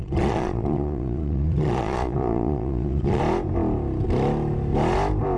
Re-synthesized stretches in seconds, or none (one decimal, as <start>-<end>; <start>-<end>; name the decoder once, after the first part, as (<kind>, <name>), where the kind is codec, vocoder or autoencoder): 0.0-3.2 (vocoder, Vocos)